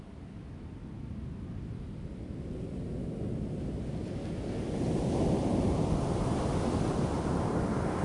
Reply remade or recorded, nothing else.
recorded